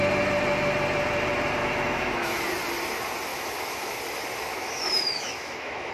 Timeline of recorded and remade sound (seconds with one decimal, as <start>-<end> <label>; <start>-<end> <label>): 0.0-1.6 recorded; 1.6-2.4 remade; 2.4-3.3 recorded; 3.3-4.0 remade; 4.0-4.5 recorded; 4.5-5.9 remade